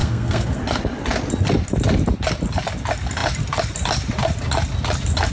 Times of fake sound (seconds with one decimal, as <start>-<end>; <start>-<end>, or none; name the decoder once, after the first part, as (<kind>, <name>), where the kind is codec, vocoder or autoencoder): 0.0-0.6 (codec, SNAC)